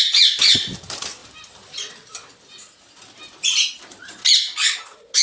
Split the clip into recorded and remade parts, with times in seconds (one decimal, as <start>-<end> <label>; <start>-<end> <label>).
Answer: 0.0-5.2 recorded